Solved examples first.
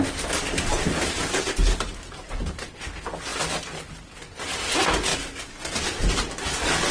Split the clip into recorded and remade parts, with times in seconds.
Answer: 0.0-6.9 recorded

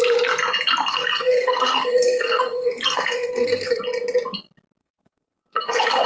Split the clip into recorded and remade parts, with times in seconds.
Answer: 0.0-0.9 recorded; 0.9-3.8 remade; 3.8-4.8 recorded; 4.8-6.1 remade

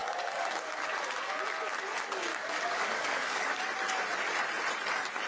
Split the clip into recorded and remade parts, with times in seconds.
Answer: 0.0-0.9 remade; 0.9-2.3 recorded; 2.3-3.6 remade; 3.6-5.3 recorded

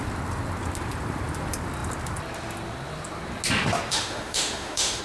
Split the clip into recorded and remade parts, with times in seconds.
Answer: 0.0-3.9 recorded; 3.9-5.0 remade

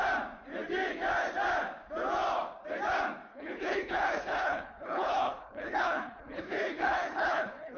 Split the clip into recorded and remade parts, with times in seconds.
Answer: 0.0-3.3 recorded; 3.3-7.8 remade

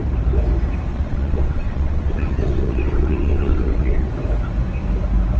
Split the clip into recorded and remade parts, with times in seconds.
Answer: 0.0-0.9 recorded; 0.9-4.1 remade; 4.1-5.4 recorded